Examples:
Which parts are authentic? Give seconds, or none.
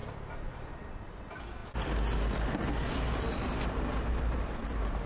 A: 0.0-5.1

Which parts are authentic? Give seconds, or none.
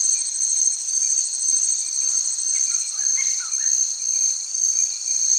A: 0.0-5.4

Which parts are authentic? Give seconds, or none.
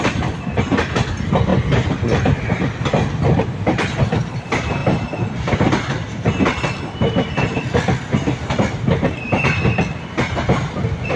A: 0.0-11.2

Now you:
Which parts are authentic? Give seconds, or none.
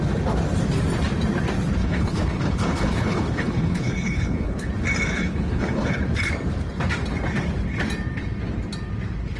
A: 0.0-1.8; 4.7-5.2; 6.0-9.4